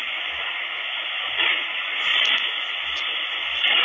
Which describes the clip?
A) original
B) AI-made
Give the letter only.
A